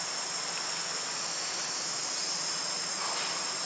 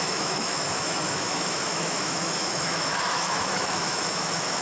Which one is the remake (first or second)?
second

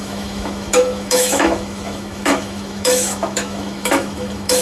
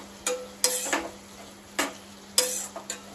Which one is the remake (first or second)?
first